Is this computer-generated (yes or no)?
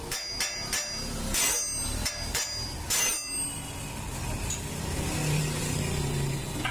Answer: no